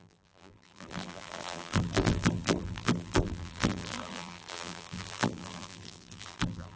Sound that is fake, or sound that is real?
fake